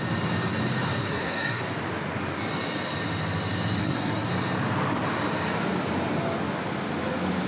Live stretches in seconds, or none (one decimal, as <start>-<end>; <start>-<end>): 0.0-1.0; 1.6-3.8; 4.3-7.5